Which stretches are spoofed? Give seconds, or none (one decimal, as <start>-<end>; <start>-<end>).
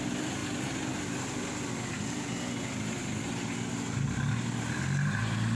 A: none